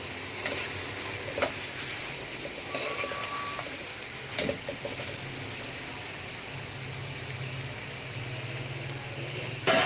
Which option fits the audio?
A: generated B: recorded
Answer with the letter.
B